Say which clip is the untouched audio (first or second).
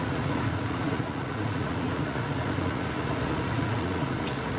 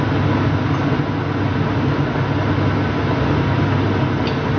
second